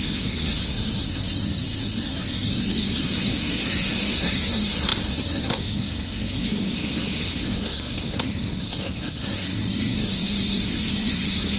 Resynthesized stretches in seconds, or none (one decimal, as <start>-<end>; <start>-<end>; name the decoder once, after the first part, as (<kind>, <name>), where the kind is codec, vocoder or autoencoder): 0.0-11.6 (codec, SNAC)